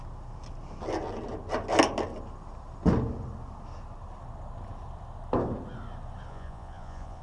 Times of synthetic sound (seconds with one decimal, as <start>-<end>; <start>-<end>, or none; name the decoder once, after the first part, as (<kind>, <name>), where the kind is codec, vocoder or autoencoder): 6.3-7.2 (vocoder, Vocos)